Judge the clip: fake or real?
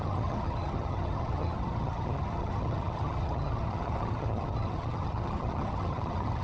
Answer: fake